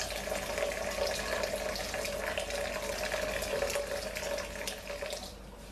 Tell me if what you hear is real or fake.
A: real